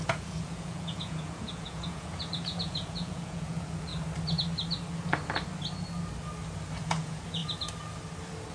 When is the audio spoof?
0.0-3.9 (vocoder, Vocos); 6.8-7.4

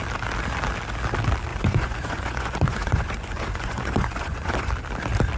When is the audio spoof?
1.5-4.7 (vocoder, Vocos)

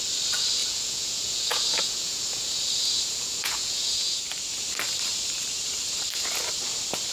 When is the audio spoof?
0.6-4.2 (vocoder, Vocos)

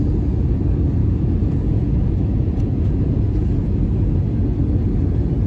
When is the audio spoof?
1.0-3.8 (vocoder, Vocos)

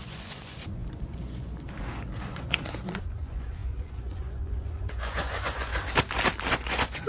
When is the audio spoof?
0.0-5.7 (vocoder, Vocos); 6.5-7.1

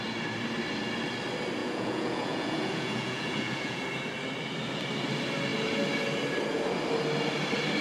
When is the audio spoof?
1.6-3.8 (vocoder, Vocos)

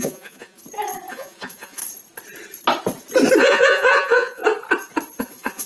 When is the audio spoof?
0.0-0.6 (vocoder, Vocos); 1.1-1.8; 3.4-4.4; 5.2-5.7

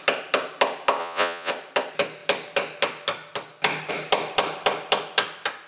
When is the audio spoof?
1.0-1.5 (vocoder, Vocos)